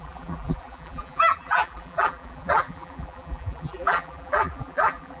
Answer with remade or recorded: remade